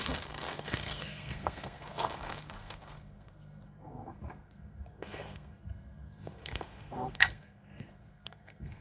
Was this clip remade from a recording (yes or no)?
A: yes